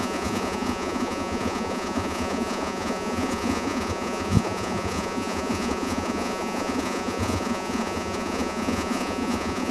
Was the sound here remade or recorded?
remade